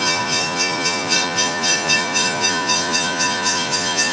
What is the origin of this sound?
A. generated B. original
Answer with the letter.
A